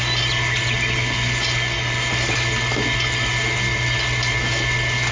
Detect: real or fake real